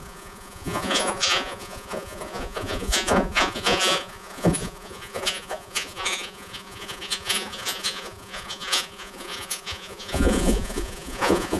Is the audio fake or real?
fake